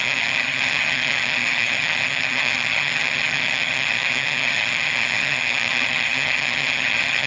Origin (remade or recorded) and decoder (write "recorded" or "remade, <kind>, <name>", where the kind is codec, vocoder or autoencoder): remade, vocoder, HiFi-GAN